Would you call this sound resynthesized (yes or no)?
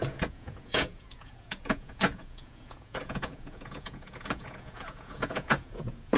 yes